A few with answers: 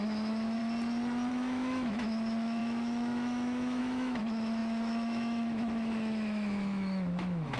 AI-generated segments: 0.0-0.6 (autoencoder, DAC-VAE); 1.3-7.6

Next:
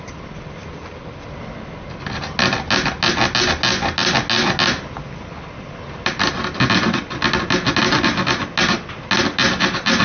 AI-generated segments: none